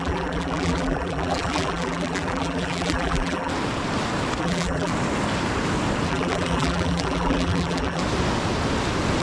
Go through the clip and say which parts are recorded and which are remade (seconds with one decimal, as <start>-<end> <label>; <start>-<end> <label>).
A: 0.0-3.5 remade; 3.5-4.4 recorded; 4.4-4.9 remade; 4.9-6.1 recorded; 6.1-8.0 remade; 8.0-9.2 recorded